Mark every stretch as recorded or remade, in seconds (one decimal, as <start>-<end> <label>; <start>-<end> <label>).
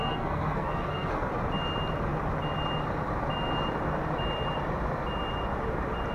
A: 0.0-1.3 remade; 1.3-6.1 recorded